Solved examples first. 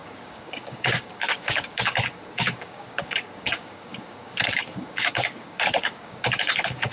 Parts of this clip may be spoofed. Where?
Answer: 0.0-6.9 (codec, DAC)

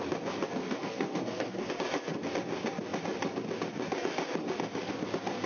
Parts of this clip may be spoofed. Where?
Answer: 0.6-1.7 (codec, SNAC)

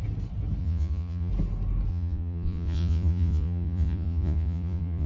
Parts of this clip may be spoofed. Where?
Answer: 0.6-1.3 (vocoder, Vocos); 1.9-5.1

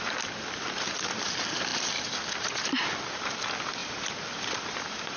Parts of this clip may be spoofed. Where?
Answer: none

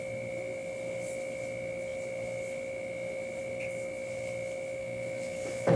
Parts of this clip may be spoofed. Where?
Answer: 4.8-5.8 (autoencoder, DAC-VAE)

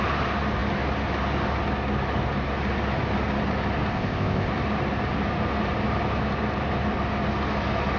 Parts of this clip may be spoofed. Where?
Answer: 3.9-4.5 (codec, ZipCodec)

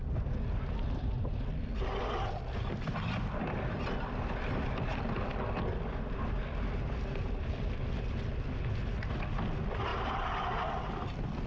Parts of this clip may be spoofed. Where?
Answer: none